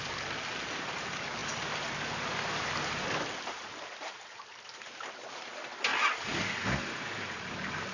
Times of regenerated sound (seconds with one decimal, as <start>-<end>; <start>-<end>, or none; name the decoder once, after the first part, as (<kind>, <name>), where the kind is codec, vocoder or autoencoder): none

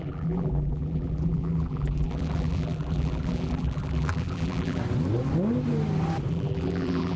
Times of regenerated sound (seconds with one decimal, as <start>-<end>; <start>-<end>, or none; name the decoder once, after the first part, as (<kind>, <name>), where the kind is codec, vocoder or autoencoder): 0.0-4.8 (vocoder, BigVGAN v2); 6.3-7.2